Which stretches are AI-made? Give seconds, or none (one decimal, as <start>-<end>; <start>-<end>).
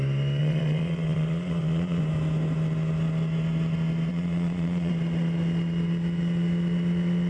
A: 0.4-2.0; 4.1-4.9